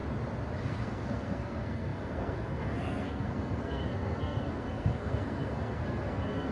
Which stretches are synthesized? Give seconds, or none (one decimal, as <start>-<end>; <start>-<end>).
0.6-6.5